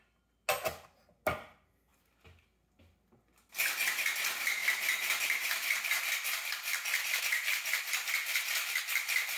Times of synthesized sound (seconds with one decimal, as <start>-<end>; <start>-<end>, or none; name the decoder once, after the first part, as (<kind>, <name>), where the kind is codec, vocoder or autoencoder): 4.6-7.2 (vocoder, BigVGAN v2)